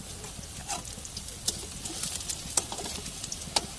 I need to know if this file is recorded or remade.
recorded